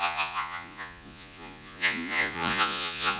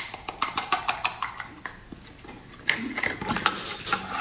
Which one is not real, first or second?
first